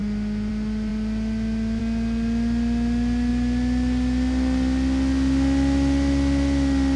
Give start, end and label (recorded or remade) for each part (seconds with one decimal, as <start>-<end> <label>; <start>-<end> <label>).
0.0-7.0 recorded